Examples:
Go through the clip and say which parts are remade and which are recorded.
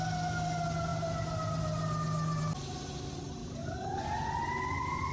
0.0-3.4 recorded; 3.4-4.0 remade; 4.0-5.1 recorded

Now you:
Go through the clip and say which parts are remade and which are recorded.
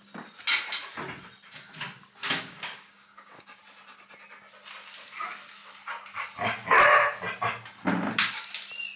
0.0-2.2 recorded; 2.2-3.6 remade; 3.6-9.0 recorded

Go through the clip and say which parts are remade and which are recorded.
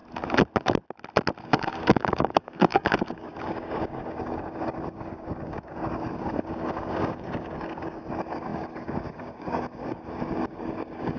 0.0-1.4 recorded; 1.4-11.2 remade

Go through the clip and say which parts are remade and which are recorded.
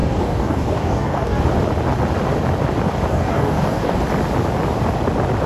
0.0-1.4 remade; 1.4-3.1 recorded; 3.1-4.0 remade; 4.0-5.5 recorded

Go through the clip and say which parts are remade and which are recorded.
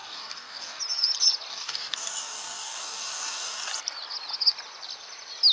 0.0-0.8 remade; 0.8-1.5 recorded; 1.5-3.7 remade; 3.7-5.5 recorded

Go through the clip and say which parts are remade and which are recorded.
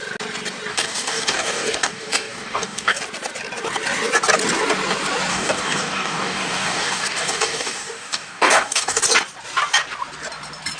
0.0-0.7 recorded; 0.7-3.0 remade; 3.0-5.3 recorded; 5.3-9.0 remade; 9.0-10.8 recorded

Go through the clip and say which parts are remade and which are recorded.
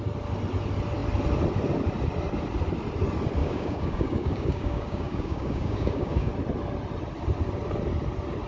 0.0-3.4 recorded; 3.4-6.3 remade; 6.3-8.5 recorded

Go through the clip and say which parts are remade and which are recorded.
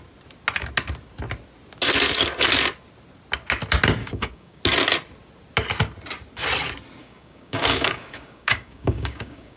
0.0-4.0 recorded; 4.0-4.6 remade; 4.6-7.0 recorded; 7.0-9.6 remade